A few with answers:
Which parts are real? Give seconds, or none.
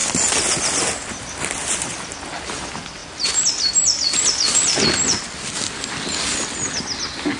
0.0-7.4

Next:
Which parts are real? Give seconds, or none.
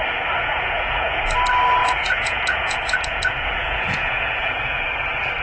0.0-0.4; 1.2-1.8; 4.9-5.4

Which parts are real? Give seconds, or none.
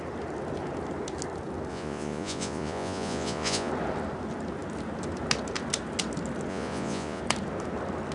0.0-1.7; 3.7-6.5; 7.2-8.1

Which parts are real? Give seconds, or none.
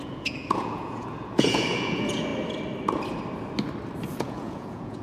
2.3-4.1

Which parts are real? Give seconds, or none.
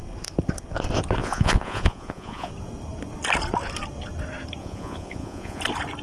0.0-1.2; 2.5-4.6; 5.6-6.0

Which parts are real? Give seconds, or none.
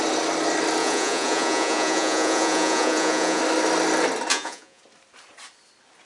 0.0-0.8; 3.4-4.3; 4.8-6.1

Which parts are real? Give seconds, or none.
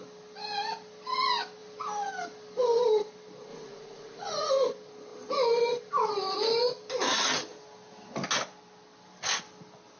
0.0-3.5; 4.5-10.0